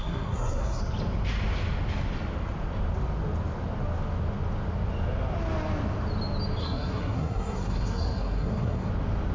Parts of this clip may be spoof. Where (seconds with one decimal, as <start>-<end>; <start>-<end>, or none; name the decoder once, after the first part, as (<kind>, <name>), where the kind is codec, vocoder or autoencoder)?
0.0-0.8 (codec, SNAC); 6.6-8.9

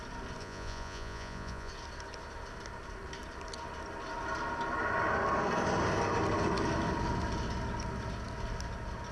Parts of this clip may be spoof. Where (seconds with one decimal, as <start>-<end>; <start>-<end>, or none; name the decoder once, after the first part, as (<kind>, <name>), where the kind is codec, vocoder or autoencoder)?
0.4-1.7 (vocoder, Vocos)

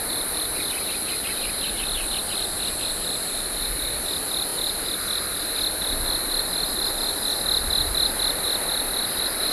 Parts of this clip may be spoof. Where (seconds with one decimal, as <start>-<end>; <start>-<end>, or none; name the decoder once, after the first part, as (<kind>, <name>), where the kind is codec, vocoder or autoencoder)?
none

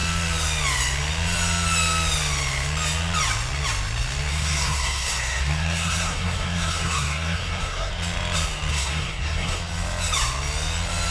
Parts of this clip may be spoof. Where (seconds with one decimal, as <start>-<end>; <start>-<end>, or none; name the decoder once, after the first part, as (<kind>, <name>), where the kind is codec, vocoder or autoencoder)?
4.3-7.9 (codec, SNAC); 8.7-9.6